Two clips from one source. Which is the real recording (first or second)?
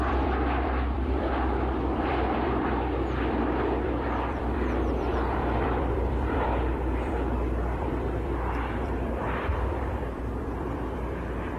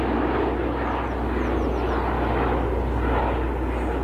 second